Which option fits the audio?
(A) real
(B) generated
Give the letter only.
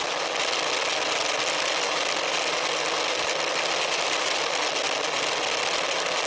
A